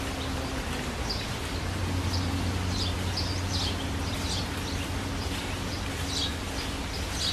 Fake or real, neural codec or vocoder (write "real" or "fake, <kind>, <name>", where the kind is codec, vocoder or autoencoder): real